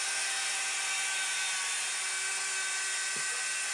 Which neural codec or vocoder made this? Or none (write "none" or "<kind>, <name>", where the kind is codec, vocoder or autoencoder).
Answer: none